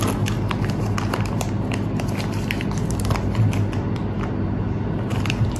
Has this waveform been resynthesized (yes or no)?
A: no